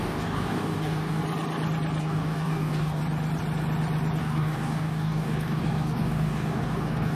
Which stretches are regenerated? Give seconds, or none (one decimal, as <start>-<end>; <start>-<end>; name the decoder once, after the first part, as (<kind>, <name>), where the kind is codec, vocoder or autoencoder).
0.0-1.2 (codec, DAC); 2.0-3.0; 4.2-7.1